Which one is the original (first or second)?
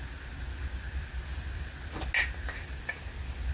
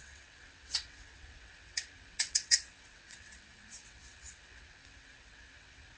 first